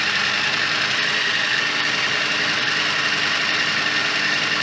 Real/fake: real